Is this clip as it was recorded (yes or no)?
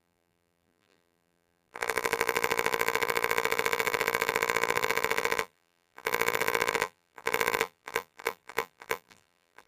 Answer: no